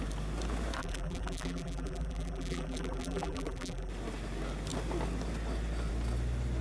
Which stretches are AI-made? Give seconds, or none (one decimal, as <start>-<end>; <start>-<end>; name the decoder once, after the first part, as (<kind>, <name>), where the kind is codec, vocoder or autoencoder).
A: 0.8-3.9 (vocoder, BigVGAN v2)